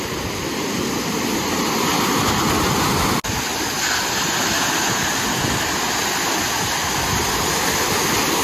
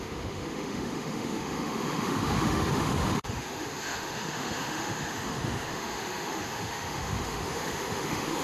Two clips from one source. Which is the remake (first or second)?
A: second